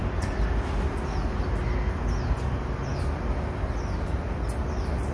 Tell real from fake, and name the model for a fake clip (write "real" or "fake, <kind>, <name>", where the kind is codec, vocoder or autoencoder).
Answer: real